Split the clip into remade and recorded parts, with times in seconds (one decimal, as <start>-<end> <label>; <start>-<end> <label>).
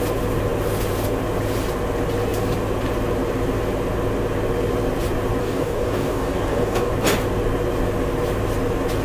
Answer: 0.0-5.4 recorded; 5.4-6.9 remade; 6.9-9.0 recorded